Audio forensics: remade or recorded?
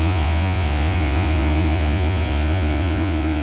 remade